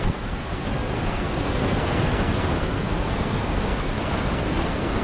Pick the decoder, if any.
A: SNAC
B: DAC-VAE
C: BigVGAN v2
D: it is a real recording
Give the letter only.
A